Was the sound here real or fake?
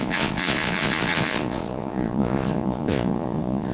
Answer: fake